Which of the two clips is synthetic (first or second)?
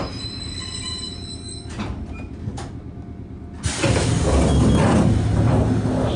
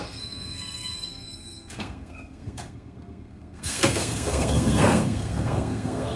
second